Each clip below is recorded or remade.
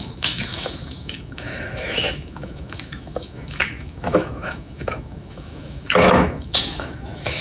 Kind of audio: remade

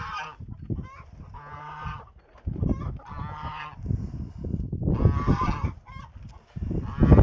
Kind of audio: recorded